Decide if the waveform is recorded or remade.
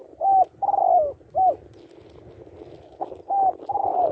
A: recorded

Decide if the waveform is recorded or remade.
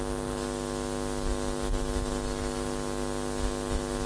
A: recorded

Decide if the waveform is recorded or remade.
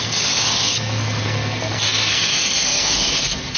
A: remade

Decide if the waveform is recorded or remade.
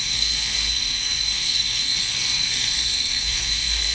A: remade